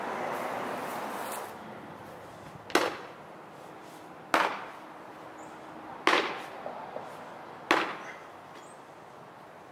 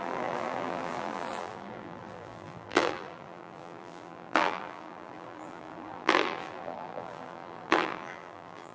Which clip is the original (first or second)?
first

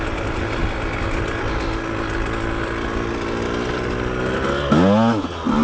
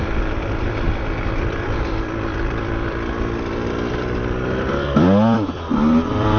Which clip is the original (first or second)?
first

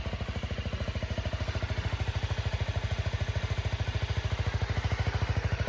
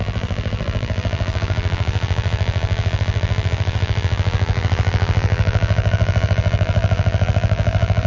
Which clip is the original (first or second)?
first